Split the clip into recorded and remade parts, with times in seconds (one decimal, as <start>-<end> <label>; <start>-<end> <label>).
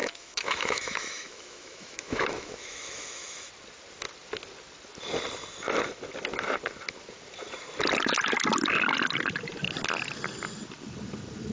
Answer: 0.0-3.5 remade; 3.5-11.5 recorded